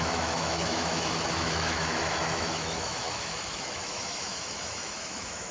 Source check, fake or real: fake